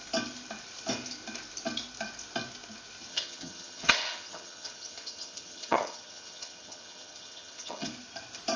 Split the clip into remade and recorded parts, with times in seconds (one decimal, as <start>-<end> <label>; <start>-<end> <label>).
0.0-3.1 recorded; 3.1-7.9 remade; 7.9-8.6 recorded